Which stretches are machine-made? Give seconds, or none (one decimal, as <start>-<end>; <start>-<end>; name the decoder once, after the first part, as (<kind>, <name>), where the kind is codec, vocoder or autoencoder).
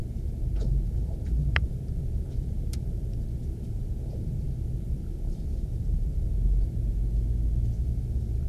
0.0-6.3 (vocoder, BigVGAN v2); 7.9-8.5